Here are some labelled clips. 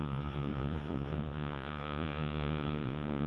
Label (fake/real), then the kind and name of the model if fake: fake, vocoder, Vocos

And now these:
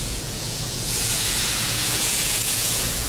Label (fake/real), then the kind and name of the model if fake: fake, vocoder, Vocos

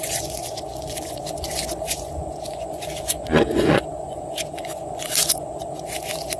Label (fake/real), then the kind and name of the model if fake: fake, vocoder, Vocos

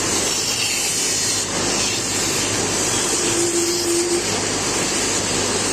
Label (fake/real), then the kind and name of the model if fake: real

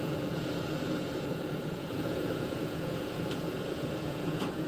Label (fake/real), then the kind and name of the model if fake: fake, vocoder, Vocos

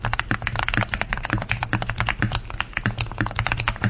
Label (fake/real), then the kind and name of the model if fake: real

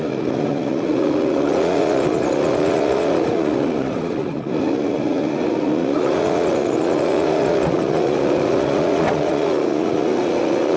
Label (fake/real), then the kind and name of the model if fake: fake, vocoder, Vocos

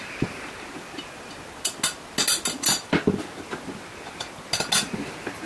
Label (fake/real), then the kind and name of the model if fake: real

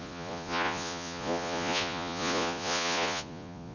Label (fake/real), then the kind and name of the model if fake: fake, vocoder, Vocos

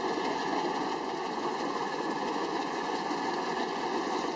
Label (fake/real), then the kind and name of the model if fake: fake, vocoder, Vocos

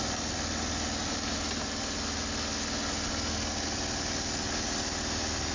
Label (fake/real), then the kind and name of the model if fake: real